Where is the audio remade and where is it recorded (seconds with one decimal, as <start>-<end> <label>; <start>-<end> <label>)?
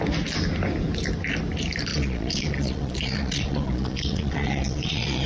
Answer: 0.0-1.9 recorded; 1.9-5.3 remade